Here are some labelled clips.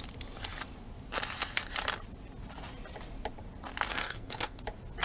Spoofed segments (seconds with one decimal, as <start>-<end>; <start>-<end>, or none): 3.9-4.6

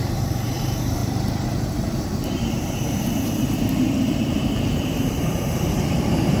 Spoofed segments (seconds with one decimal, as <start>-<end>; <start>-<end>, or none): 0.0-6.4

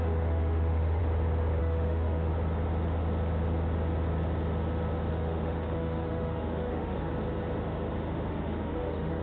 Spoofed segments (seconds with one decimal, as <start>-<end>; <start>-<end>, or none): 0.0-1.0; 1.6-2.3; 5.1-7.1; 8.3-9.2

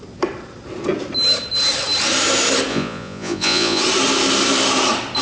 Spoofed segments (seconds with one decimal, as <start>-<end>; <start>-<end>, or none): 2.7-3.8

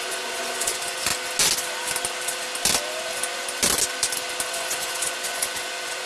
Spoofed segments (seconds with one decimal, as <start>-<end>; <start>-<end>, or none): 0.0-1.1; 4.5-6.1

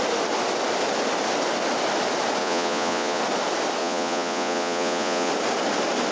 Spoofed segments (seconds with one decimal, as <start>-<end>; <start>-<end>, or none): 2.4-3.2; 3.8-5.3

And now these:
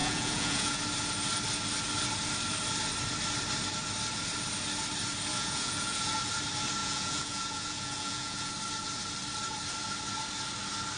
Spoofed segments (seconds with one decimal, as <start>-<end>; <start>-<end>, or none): 0.0-0.8; 5.3-6.2; 6.8-8.5